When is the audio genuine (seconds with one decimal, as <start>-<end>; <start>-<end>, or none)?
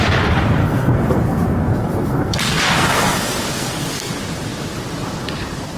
0.0-0.6; 4.1-5.8